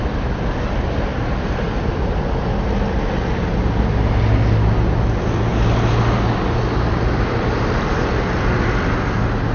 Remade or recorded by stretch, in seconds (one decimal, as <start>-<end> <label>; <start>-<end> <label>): 0.0-9.5 recorded